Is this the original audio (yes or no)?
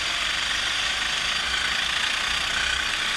yes